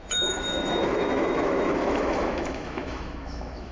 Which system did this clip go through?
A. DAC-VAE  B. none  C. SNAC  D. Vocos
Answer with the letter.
A